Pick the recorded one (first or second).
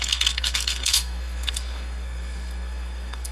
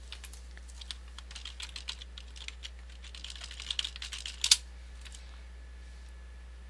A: second